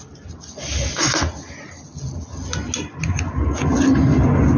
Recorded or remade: recorded